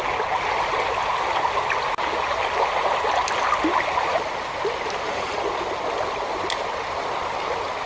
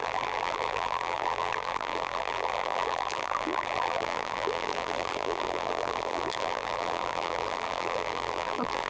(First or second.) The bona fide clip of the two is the first